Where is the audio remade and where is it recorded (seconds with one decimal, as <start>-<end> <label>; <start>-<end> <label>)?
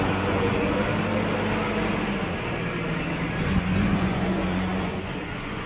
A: 0.0-0.9 remade; 0.9-3.4 recorded; 3.4-5.7 remade